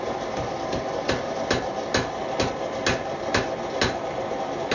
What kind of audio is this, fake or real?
real